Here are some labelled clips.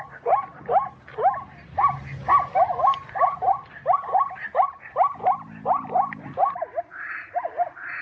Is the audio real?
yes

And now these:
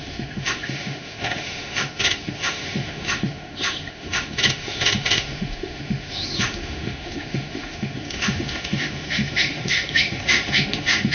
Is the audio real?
no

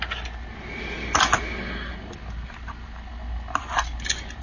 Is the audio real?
yes